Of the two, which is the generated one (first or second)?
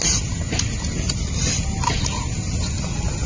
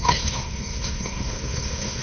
second